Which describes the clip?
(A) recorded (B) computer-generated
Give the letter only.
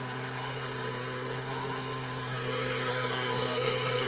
B